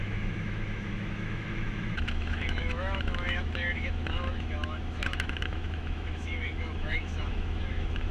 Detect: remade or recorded remade